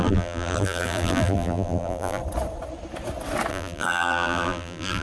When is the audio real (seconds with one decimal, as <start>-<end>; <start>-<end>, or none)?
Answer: 2.2-3.5